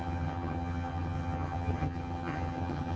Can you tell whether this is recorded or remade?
remade